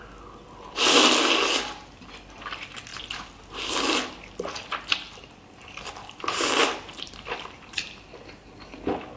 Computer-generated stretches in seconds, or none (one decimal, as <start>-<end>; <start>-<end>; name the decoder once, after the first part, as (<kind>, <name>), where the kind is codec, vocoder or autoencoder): 2.9-3.5 (vocoder, BigVGAN v2); 6.6-7.8